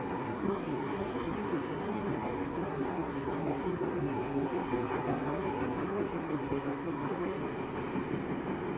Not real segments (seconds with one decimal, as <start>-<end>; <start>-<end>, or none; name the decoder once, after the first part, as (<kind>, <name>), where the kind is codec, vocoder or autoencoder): 0.0-7.4 (codec, SNAC)